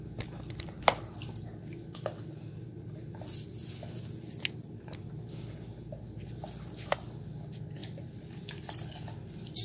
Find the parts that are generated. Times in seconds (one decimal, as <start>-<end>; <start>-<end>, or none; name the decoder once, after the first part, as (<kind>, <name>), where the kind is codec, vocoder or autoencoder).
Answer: 7.8-8.7 (vocoder, BigVGAN v2)

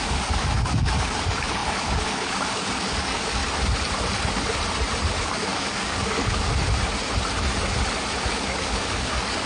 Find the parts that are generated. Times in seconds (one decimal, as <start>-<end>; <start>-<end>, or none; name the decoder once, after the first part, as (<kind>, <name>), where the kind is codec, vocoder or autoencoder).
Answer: 0.0-3.4 (codec, DAC); 5.1-6.5; 8.3-9.5